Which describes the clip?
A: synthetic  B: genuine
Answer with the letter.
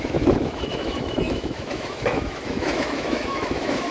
A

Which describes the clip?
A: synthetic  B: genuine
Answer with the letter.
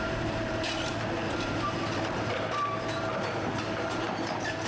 A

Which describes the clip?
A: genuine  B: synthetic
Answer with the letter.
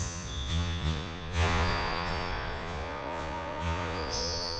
B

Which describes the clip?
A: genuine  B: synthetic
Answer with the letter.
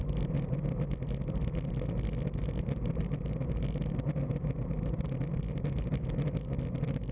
A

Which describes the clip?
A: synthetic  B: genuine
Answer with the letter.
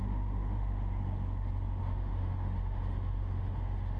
A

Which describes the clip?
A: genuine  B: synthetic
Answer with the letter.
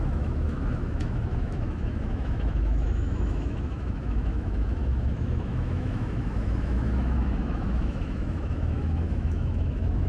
B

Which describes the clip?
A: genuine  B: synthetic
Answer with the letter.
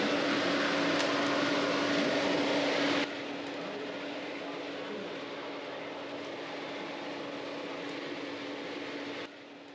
A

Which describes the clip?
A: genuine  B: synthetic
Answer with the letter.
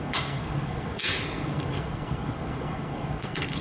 B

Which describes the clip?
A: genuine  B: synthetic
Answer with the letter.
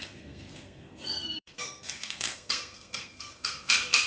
B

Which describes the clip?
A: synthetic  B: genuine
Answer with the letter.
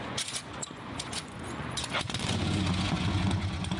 A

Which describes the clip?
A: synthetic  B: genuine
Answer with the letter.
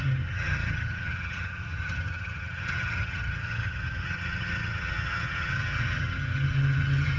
A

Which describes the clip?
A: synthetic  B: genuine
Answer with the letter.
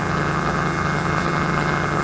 A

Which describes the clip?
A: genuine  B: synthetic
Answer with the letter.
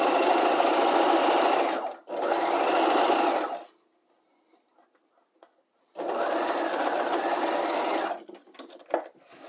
A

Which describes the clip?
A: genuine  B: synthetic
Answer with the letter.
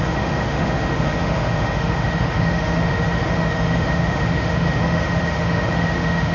B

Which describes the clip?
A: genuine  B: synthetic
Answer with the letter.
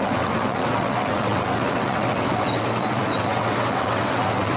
B